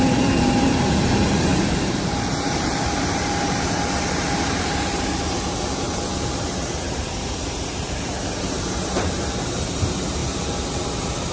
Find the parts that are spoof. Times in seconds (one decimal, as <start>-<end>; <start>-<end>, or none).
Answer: 0.0-11.3